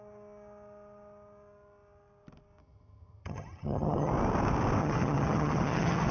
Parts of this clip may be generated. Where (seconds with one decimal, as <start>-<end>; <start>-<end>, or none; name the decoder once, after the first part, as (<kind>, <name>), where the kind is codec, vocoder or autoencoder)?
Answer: 2.6-4.1 (vocoder, HiFi-GAN); 4.8-6.1